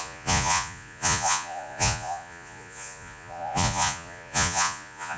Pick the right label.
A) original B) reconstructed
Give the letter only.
B